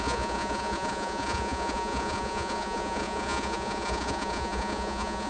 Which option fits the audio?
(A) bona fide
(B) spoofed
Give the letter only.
B